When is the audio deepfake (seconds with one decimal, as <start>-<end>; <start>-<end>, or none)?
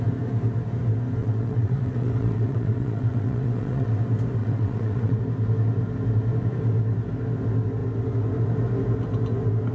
1.2-4.0; 4.4-5.2